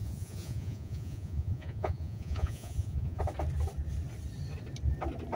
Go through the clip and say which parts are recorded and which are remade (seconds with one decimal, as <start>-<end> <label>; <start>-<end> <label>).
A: 0.0-3.2 remade; 3.2-5.4 recorded